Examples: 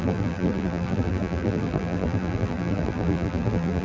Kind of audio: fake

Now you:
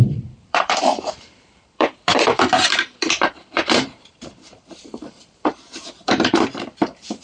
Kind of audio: fake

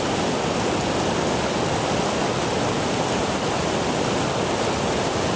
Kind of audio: real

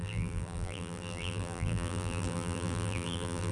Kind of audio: fake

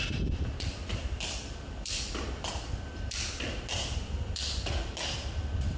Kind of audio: real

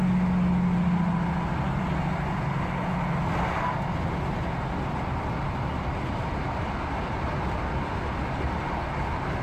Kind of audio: real